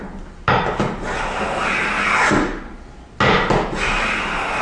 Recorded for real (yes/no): yes